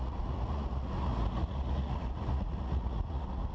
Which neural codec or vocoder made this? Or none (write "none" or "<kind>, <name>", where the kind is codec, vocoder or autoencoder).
vocoder, Vocos